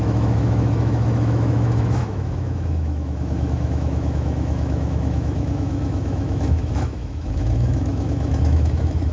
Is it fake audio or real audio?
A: fake